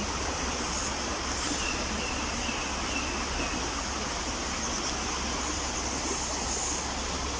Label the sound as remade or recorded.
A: recorded